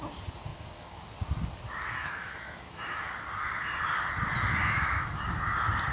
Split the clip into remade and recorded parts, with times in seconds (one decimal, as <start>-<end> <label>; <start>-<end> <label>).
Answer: 0.0-0.5 recorded; 0.5-1.0 remade; 1.0-2.0 recorded; 2.0-3.0 remade; 3.0-4.6 recorded; 4.6-5.2 remade; 5.2-5.9 recorded